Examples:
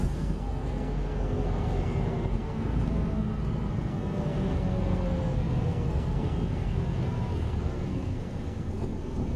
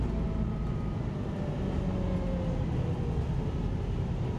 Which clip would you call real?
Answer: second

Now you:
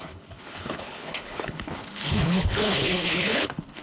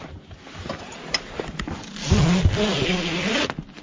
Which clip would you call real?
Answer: second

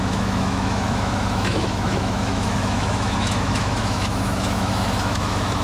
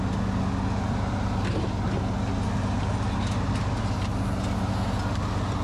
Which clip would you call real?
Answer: second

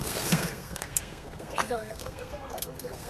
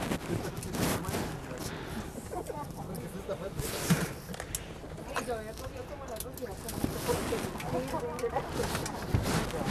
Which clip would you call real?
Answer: second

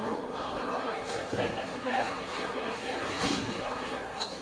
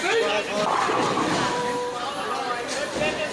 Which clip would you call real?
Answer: second